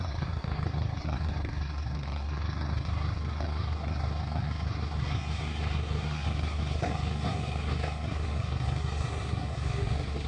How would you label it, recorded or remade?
remade